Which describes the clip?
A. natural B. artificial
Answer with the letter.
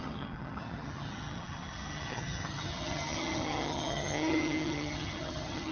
B